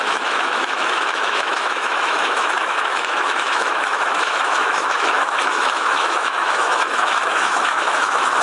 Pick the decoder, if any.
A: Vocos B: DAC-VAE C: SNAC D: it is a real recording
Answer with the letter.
B